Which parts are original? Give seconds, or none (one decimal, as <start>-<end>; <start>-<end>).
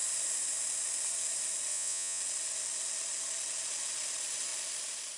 0.0-1.7; 2.2-5.2